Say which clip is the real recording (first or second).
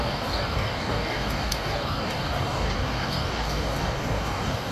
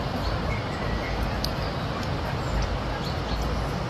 second